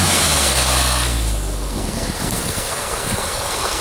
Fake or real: fake